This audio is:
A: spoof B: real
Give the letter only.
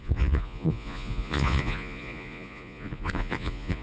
A